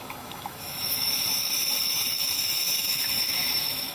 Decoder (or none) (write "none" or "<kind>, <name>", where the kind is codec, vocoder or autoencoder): autoencoder, DAC-VAE